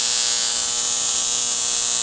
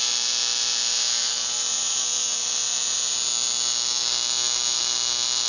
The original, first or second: first